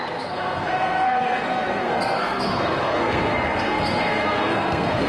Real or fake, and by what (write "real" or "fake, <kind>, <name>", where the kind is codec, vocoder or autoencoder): fake, codec, SNAC